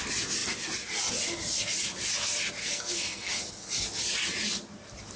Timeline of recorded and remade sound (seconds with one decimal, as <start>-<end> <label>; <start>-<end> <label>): 0.0-2.6 recorded; 2.6-3.3 remade; 3.3-5.2 recorded